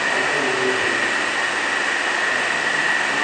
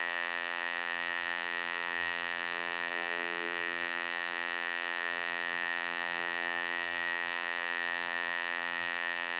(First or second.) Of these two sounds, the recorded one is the first